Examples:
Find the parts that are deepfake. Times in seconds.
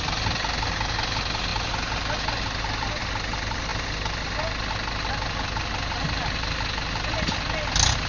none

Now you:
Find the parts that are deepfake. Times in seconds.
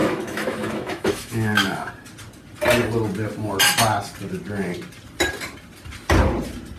0.0-1.9 (autoencoder, DAC-VAE)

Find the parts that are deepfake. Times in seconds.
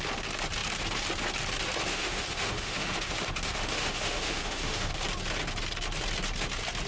1.9-5.0 (autoencoder, DAC-VAE)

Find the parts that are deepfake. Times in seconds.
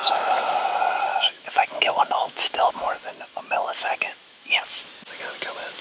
0.0-0.5 (autoencoder, DAC-VAE); 1.1-4.6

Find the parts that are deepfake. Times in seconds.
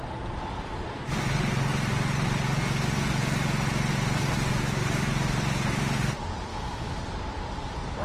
6.5-7.0 (autoencoder, DAC-VAE)